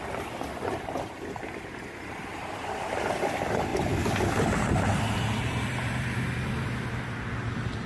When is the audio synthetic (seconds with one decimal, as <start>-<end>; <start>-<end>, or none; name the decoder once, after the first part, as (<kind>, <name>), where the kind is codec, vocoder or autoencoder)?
0.0-3.7 (vocoder, BigVGAN v2); 5.4-7.9